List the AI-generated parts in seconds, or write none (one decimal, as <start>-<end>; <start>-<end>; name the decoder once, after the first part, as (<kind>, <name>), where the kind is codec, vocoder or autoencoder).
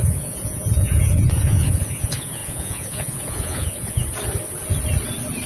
0.0-4.0 (vocoder, Vocos)